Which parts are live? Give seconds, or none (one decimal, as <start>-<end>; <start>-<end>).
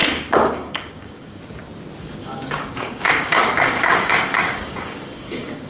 1.4-2.2